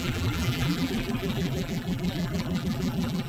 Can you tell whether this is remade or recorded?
remade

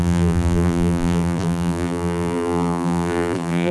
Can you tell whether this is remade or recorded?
remade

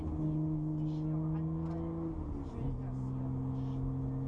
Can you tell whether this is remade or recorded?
recorded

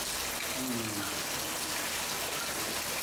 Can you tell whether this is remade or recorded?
recorded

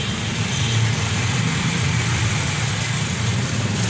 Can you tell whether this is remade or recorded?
recorded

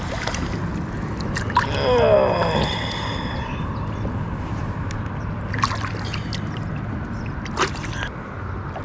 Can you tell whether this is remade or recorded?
recorded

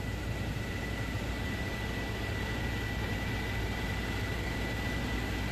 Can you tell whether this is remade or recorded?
recorded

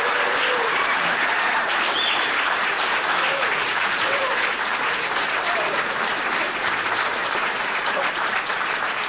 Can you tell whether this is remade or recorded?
remade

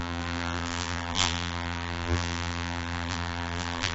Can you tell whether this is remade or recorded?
remade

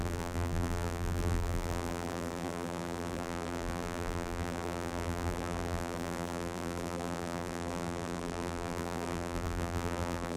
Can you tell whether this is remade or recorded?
remade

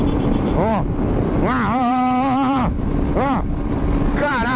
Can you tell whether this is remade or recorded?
remade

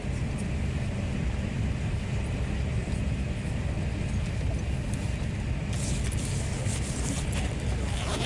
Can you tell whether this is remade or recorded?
recorded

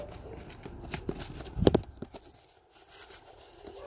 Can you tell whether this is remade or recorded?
recorded